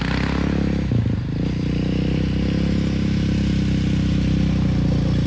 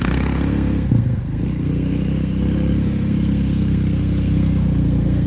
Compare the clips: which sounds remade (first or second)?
second